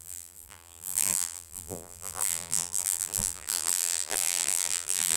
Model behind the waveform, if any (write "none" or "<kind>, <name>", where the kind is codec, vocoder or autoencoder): vocoder, BigVGAN v2